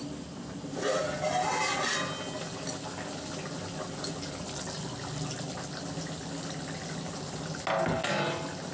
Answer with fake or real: real